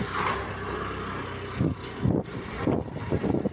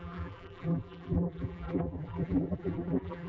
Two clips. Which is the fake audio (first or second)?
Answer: second